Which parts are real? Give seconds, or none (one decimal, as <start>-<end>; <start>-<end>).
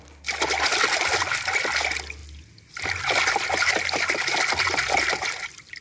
0.0-5.8